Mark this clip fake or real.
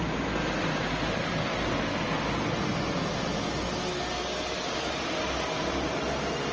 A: real